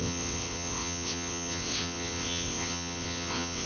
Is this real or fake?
fake